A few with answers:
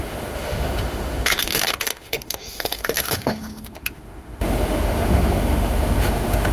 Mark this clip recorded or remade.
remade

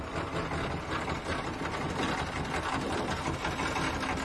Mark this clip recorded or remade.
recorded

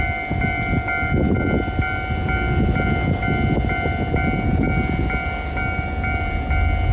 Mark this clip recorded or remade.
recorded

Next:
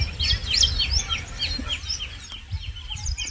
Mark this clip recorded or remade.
recorded